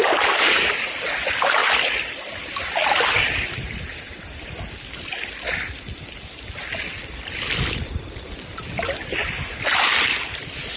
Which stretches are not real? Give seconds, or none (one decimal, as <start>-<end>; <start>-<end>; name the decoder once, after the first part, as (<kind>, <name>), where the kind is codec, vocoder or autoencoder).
none